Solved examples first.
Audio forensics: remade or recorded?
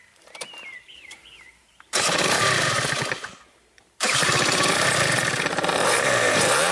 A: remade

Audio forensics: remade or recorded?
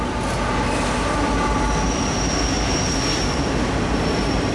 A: recorded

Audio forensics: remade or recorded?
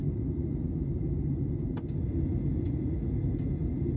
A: recorded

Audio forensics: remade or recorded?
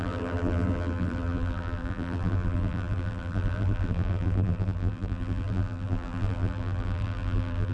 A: remade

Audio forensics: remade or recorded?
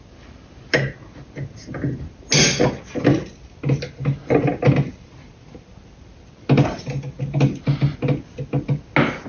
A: recorded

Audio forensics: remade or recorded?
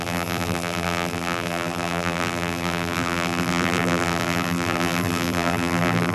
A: remade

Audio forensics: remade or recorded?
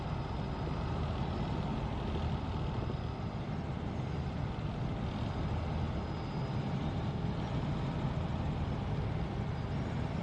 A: recorded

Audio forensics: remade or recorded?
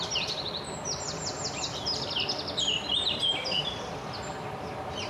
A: remade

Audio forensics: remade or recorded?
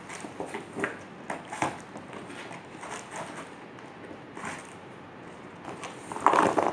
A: recorded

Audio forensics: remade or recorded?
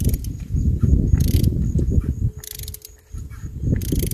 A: recorded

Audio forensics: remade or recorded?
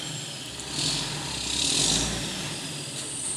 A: recorded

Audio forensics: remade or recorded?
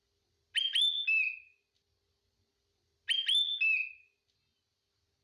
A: recorded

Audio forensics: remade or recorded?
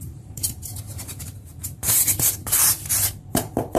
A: remade